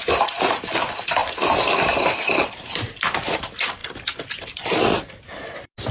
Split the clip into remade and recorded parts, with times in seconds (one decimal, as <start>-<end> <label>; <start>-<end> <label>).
0.0-1.2 recorded; 1.2-2.4 remade; 2.4-3.8 recorded; 3.8-4.4 remade; 4.4-5.9 recorded